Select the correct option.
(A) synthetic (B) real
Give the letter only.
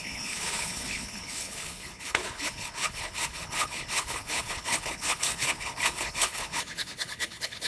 A